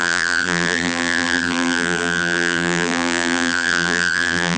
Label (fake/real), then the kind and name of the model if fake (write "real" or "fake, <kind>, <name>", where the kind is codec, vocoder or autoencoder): fake, vocoder, BigVGAN v2